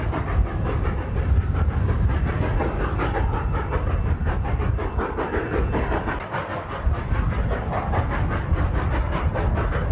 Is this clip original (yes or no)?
yes